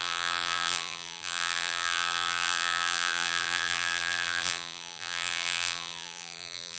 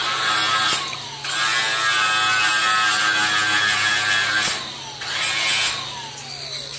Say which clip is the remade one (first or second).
first